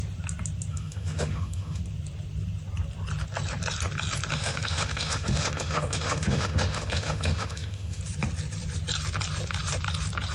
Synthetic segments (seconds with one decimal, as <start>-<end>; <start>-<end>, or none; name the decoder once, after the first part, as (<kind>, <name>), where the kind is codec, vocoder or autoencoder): 0.7-1.8 (autoencoder, DAC-VAE); 4.3-8.0

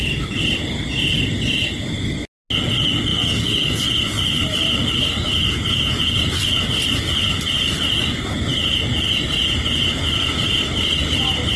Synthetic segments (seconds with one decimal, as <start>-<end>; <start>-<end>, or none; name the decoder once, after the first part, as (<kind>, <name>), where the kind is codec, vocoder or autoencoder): none

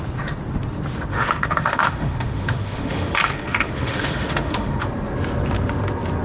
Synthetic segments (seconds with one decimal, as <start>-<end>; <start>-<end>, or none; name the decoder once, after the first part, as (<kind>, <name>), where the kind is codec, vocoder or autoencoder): 1.1-4.8 (autoencoder, DAC-VAE)

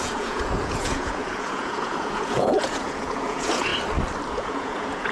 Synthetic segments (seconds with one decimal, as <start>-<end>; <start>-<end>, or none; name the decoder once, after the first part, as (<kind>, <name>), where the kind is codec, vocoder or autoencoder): 0.0-3.7 (vocoder, Vocos); 4.3-5.1

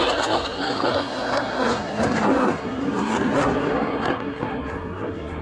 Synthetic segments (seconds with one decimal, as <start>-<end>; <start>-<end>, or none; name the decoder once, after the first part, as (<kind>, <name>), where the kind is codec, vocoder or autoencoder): 0.0-5.4 (codec, SNAC)

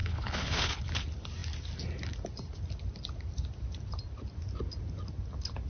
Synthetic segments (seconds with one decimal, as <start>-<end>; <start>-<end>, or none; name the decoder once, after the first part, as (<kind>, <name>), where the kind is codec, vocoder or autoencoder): 0.0-0.7 (codec, HILCodec)